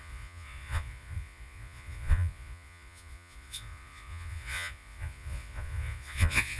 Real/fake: fake